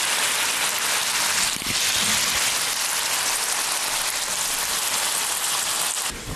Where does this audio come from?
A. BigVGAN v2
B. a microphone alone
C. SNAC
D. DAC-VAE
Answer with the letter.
B